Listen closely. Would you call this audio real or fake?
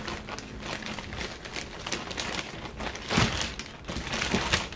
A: real